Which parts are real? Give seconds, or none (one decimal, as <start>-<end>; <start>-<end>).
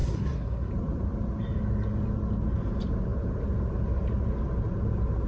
0.7-5.3